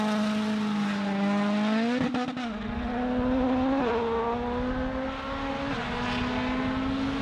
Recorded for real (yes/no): yes